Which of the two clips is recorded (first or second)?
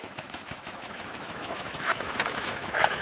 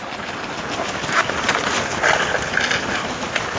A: second